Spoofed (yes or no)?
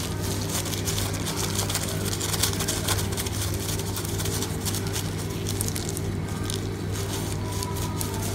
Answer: no